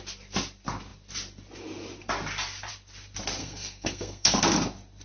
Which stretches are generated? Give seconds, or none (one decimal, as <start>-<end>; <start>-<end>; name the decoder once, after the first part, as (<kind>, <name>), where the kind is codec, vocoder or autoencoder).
3.4-4.4 (codec, SNAC)